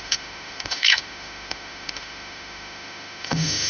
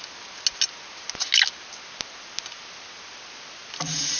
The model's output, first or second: first